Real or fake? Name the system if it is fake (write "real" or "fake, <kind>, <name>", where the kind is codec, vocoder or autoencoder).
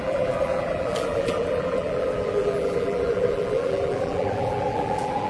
fake, vocoder, BigVGAN v2